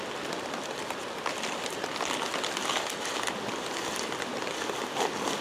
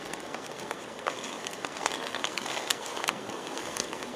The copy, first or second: second